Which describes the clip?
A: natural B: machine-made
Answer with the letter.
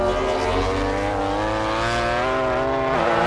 A